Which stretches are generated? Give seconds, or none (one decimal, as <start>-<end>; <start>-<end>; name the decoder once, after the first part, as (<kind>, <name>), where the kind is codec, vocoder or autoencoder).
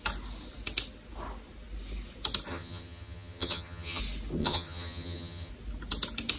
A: 2.5-4.0 (vocoder, HiFi-GAN); 4.4-5.5